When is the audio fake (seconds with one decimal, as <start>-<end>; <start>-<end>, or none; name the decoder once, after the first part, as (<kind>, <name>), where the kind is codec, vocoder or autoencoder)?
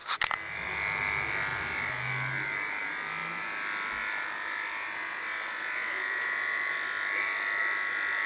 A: 3.2-7.6 (vocoder, BigVGAN v2)